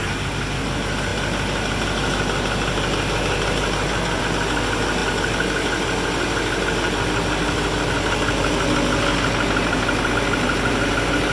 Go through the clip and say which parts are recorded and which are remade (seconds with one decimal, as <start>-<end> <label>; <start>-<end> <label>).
0.0-11.3 recorded